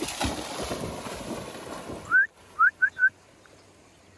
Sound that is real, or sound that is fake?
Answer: real